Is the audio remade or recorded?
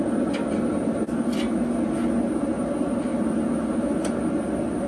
recorded